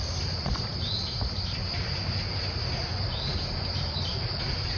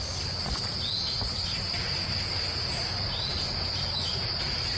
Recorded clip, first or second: second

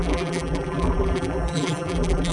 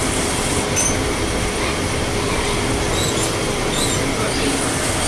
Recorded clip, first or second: second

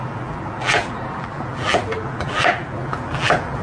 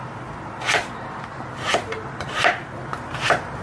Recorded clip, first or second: second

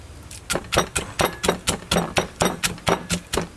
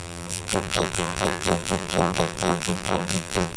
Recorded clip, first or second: first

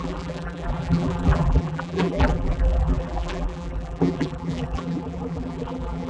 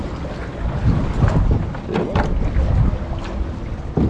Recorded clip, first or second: second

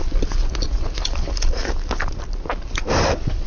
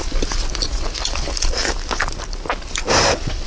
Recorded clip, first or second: second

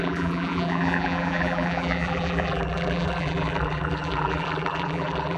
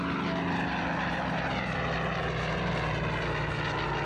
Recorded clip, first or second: second